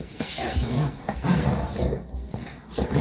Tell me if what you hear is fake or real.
fake